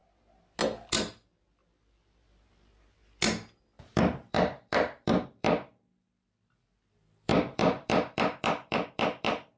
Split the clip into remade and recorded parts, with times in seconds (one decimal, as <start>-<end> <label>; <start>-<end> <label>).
0.0-3.6 recorded; 3.6-9.6 remade